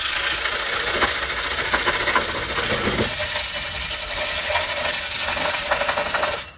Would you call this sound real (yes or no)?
yes